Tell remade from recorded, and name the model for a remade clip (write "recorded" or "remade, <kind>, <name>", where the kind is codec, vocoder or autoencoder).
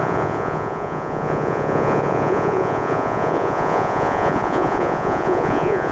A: remade, vocoder, Vocos